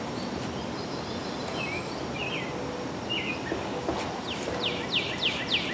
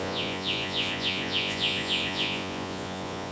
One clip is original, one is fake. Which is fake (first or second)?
second